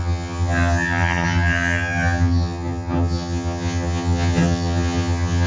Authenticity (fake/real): fake